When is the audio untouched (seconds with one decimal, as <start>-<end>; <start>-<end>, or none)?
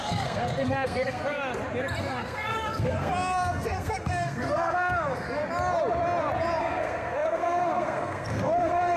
1.2-2.0; 5.4-6.6